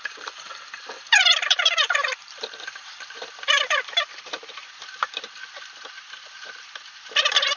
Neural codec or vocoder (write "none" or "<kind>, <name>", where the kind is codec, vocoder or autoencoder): vocoder, BigVGAN v2